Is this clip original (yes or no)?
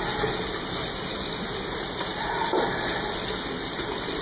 yes